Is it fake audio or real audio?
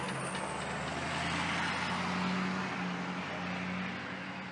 real